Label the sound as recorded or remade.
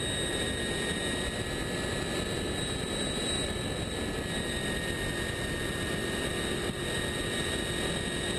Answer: recorded